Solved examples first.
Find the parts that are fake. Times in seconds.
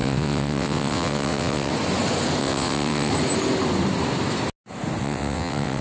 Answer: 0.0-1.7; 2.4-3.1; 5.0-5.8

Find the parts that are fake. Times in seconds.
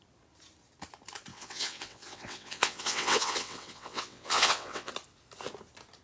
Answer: 1.3-4.9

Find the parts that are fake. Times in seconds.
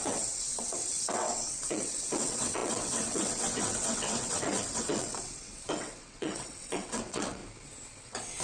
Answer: 0.0-7.4; 8.0-8.4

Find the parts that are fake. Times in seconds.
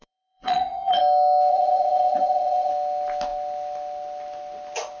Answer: 0.0-1.0; 1.5-2.7